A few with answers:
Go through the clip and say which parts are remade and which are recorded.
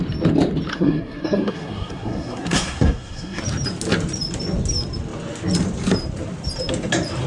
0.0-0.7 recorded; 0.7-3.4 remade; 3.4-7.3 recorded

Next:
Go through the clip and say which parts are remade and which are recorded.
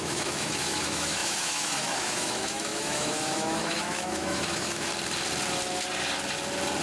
0.0-4.9 remade; 4.9-6.8 recorded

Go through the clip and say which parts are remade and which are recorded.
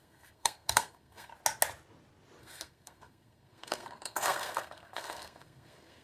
0.0-1.3 remade; 1.3-2.4 recorded; 2.4-6.0 remade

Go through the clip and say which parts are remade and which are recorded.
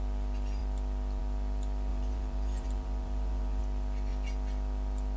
0.0-1.9 recorded; 1.9-3.6 remade; 3.6-5.2 recorded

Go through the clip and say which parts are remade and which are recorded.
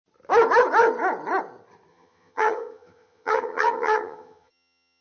0.0-1.9 recorded; 1.9-5.0 remade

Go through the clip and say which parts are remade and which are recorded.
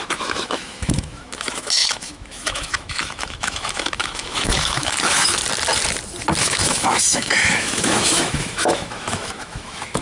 0.0-5.4 remade; 5.4-6.4 recorded; 6.4-10.0 remade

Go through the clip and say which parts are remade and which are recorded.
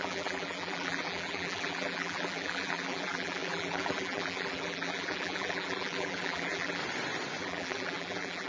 0.0-6.8 remade; 6.8-7.4 recorded; 7.4-8.5 remade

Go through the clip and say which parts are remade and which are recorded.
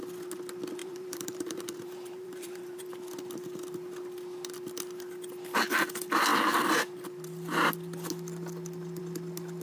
0.0-0.8 recorded; 0.8-2.9 remade; 2.9-9.6 recorded